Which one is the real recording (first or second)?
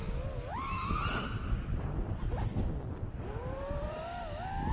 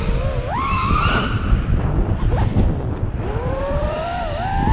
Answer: first